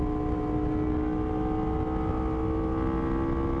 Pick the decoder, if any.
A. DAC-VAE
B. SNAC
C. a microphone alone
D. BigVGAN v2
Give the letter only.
C